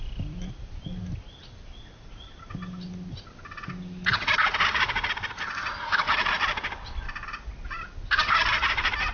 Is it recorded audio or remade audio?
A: recorded